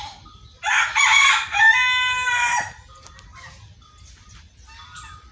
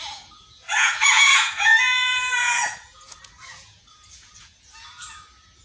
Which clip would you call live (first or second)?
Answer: first